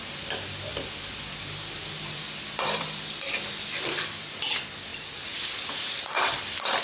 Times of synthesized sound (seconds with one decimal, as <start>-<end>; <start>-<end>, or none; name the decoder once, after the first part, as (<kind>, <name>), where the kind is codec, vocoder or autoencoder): 0.7-4.4 (vocoder, BigVGAN v2); 4.9-6.8